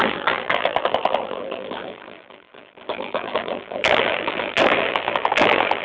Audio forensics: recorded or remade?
remade